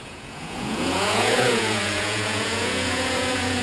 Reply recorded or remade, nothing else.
remade